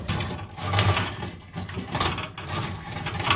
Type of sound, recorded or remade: recorded